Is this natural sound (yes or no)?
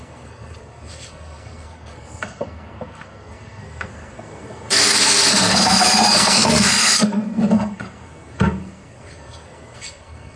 no